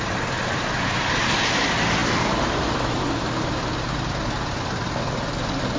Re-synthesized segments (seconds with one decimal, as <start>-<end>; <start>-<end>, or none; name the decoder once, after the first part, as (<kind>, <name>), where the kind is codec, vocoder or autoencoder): none